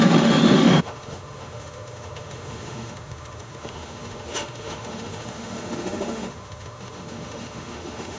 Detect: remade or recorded remade